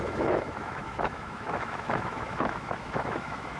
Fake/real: fake